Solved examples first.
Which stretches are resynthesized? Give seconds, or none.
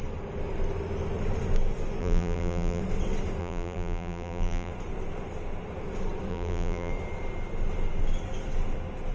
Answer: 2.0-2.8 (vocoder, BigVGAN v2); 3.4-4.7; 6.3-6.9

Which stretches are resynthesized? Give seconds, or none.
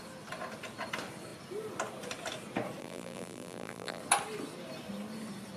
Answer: 2.8-4.0 (vocoder, BigVGAN v2)